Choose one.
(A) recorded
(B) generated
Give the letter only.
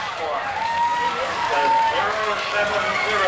B